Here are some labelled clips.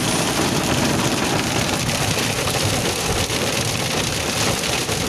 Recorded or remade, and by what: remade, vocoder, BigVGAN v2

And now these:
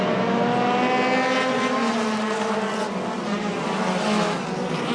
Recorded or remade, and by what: recorded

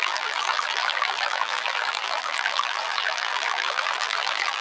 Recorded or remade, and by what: remade, vocoder, BigVGAN v2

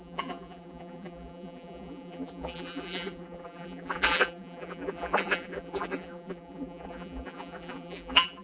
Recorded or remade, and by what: remade, vocoder, BigVGAN v2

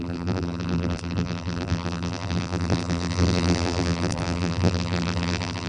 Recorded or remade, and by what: remade, vocoder, BigVGAN v2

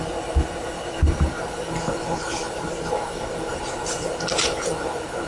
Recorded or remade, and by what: recorded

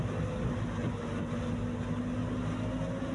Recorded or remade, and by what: recorded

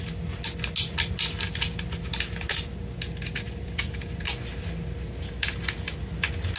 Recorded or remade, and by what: recorded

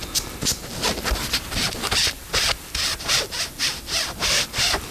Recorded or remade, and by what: recorded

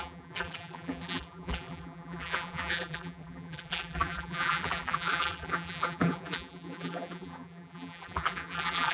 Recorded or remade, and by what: remade, vocoder, BigVGAN v2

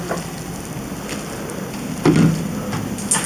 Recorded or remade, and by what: recorded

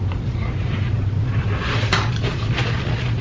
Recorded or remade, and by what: remade, vocoder, BigVGAN v2